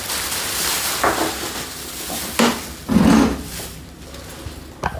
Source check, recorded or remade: recorded